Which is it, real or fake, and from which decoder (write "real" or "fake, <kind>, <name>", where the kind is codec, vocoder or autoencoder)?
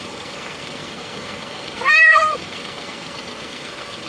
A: fake, codec, SNAC